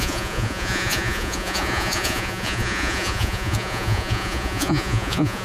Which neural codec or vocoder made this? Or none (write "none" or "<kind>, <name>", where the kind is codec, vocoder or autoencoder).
vocoder, Vocos